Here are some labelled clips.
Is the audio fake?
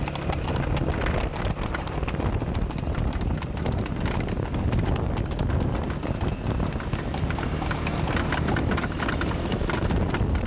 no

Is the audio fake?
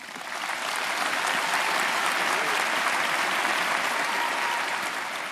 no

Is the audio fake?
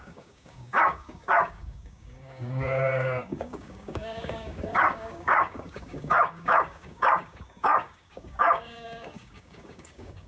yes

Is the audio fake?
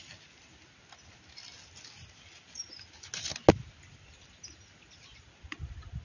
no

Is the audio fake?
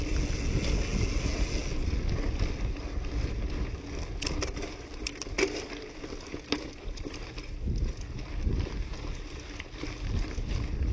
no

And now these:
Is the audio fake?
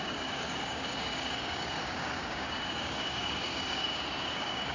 yes